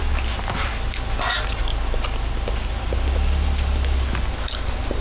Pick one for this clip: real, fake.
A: real